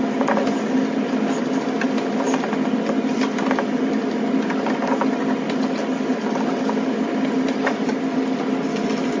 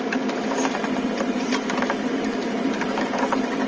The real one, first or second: first